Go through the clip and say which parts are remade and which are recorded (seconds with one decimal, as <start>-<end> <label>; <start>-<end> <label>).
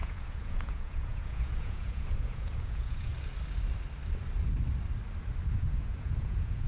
0.0-3.1 remade; 3.1-5.5 recorded; 5.5-6.7 remade